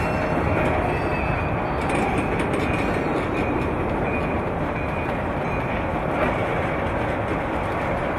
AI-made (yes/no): no